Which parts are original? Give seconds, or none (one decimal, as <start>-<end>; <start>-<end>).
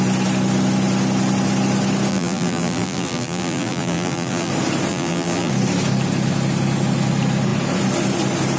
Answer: 0.0-2.1; 4.5-4.9; 5.5-8.6